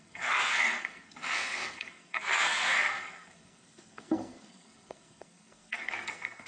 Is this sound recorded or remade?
remade